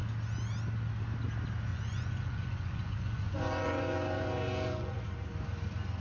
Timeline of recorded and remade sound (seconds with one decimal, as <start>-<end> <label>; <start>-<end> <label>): 0.0-1.7 recorded; 1.7-5.0 remade; 5.0-6.0 recorded